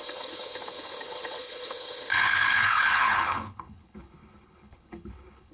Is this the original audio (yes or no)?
no